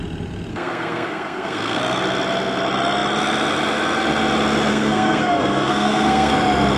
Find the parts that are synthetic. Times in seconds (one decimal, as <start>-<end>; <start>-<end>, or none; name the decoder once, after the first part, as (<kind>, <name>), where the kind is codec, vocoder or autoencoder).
0.5-1.8 (codec, SNAC); 4.7-6.3